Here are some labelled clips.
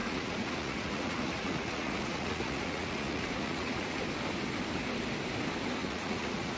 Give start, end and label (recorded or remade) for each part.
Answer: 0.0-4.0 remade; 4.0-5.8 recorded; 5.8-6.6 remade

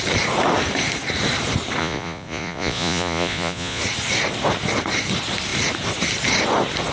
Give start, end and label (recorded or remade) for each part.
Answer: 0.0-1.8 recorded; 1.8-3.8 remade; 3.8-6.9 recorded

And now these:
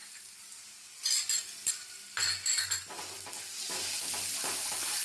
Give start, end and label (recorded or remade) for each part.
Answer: 0.0-5.0 recorded

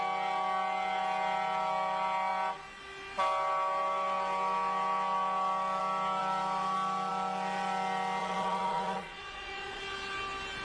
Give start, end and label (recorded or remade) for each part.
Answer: 0.0-8.2 recorded; 8.2-9.8 remade; 9.8-10.6 recorded

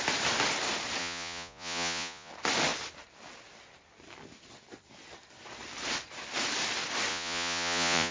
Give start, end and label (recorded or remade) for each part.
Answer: 0.0-1.0 recorded; 1.0-2.3 remade; 2.3-7.1 recorded; 7.1-8.1 remade

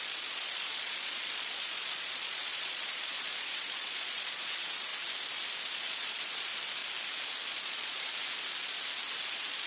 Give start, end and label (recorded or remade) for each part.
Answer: 0.0-4.9 remade; 4.9-5.7 recorded; 5.7-6.8 remade; 6.8-7.5 recorded; 7.5-8.1 remade; 8.1-9.2 recorded; 9.2-9.7 remade